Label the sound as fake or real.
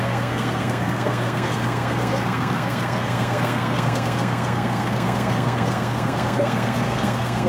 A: fake